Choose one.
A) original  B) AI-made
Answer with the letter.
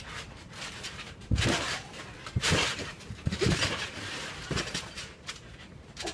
B